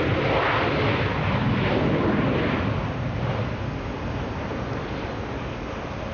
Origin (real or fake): real